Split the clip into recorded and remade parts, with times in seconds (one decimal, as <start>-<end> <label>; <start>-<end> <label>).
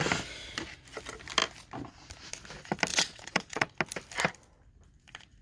0.0-2.9 recorded; 2.9-3.7 remade; 3.7-5.4 recorded